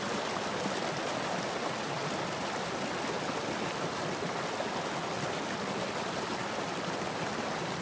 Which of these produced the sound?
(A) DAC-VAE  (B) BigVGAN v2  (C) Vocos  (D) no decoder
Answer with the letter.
D